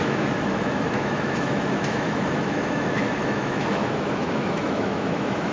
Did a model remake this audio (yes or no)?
yes